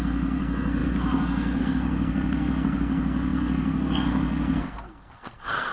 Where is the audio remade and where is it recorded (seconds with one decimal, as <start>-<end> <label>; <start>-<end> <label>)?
0.0-5.7 remade